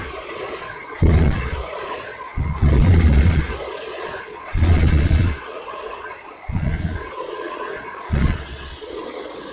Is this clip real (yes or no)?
no